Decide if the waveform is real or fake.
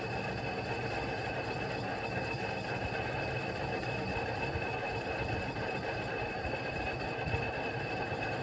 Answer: real